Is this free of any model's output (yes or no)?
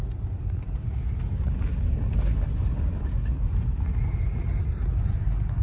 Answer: yes